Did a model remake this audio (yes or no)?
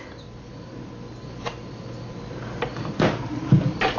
no